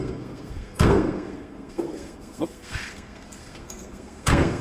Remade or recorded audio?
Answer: remade